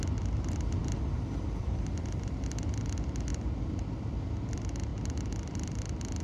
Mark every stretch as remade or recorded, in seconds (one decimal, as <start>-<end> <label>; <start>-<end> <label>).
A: 0.0-0.8 recorded; 0.8-1.9 remade; 1.9-6.2 recorded